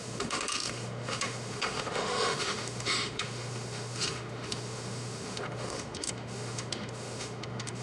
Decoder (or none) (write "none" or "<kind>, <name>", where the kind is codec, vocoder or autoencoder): autoencoder, DAC-VAE